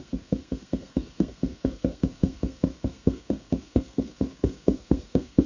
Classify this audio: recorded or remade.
remade